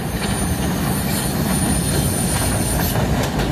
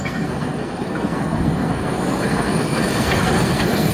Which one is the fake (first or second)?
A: second